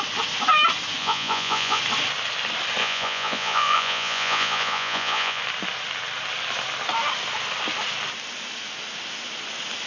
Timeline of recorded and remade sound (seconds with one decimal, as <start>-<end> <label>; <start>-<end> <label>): 0.0-1.0 recorded; 1.0-1.8 remade; 1.8-2.8 recorded; 2.8-5.4 remade; 5.4-9.9 recorded